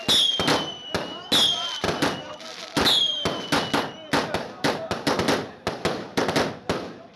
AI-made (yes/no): no